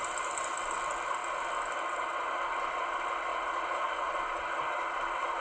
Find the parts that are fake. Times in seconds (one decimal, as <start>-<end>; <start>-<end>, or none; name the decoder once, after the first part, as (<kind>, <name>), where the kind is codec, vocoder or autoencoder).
3.3-4.1 (vocoder, Vocos)